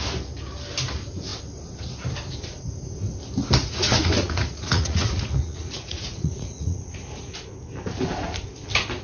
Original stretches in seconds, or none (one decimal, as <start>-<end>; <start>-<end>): 0.0-3.6; 7.2-9.0